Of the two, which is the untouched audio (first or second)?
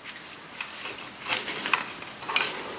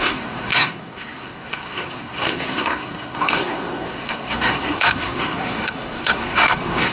first